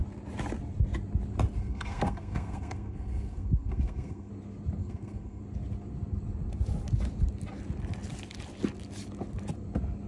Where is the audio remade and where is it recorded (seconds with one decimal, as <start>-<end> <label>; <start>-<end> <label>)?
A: 0.0-1.6 recorded; 1.6-4.3 remade; 4.3-4.8 recorded; 4.8-5.4 remade; 5.4-10.1 recorded